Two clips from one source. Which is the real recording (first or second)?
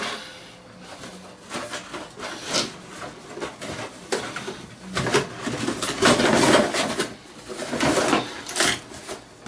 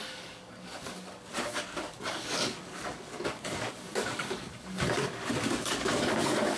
first